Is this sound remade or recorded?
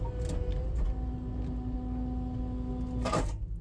recorded